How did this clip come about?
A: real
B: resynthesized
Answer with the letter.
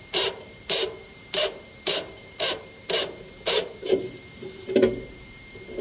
B